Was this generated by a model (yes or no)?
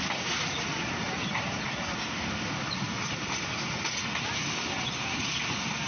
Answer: no